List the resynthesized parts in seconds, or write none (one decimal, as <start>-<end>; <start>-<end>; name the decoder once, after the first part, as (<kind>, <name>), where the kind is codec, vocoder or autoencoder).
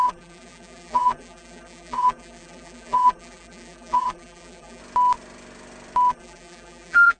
0.0-4.8 (vocoder, BigVGAN v2); 6.1-7.2